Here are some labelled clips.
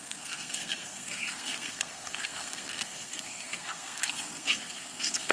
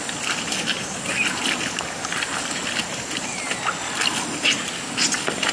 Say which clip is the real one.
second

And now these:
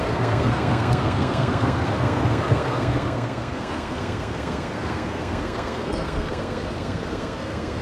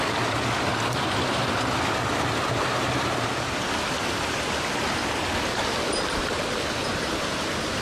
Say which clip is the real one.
second